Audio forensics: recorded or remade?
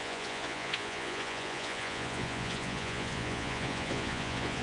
remade